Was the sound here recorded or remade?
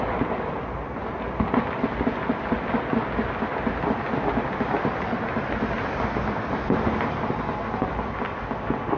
recorded